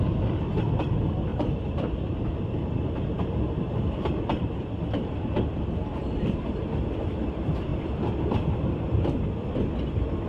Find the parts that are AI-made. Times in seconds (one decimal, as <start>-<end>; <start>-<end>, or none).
1.3-2.1; 4.3-6.6